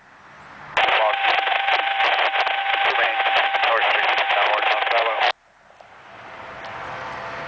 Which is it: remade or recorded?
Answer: recorded